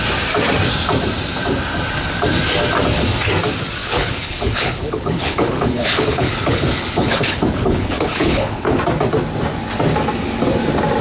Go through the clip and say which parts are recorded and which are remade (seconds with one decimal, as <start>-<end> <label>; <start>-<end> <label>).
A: 0.0-3.8 recorded; 3.8-8.8 remade; 8.8-11.0 recorded

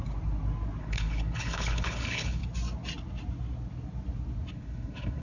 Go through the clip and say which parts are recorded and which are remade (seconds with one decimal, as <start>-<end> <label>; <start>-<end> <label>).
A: 0.0-0.8 recorded; 0.8-2.4 remade; 2.4-4.5 recorded; 4.5-5.2 remade

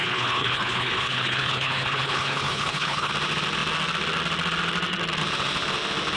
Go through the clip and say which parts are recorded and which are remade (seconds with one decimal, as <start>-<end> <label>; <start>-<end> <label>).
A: 0.0-3.1 remade; 3.1-6.2 recorded

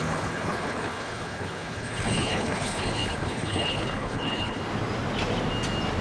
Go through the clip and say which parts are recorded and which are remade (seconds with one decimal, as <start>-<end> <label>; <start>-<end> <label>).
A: 0.0-4.6 remade; 4.6-6.0 recorded

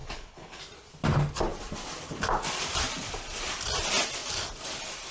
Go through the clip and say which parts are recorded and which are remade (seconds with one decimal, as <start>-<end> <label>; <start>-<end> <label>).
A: 0.0-0.6 remade; 0.6-5.1 recorded